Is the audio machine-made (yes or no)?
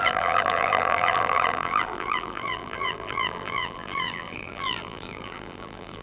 yes